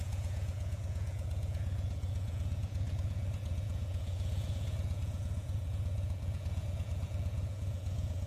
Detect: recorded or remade remade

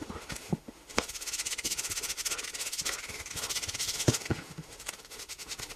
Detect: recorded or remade remade